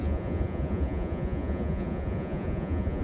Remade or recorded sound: remade